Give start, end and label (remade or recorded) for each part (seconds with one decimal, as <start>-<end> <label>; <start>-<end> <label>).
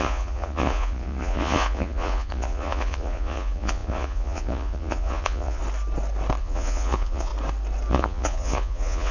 0.0-5.6 remade; 5.6-6.4 recorded; 6.4-7.3 remade; 7.3-7.9 recorded; 7.9-9.1 remade